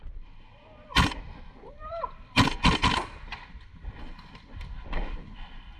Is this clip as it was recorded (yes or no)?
no